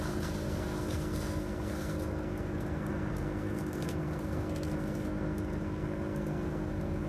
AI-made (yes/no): yes